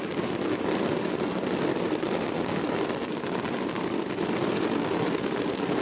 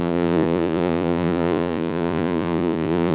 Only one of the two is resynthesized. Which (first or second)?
second